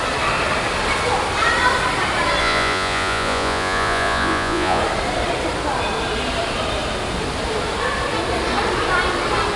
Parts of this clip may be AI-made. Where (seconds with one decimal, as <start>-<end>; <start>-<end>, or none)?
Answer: 2.4-4.8